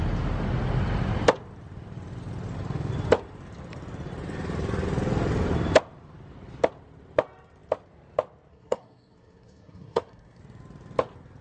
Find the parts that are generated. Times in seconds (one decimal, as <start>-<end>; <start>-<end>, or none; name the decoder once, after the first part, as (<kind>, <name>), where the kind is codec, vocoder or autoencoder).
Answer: 8.5-10.4 (codec, SNAC)